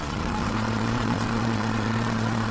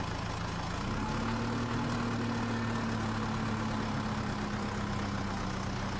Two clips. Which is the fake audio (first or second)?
first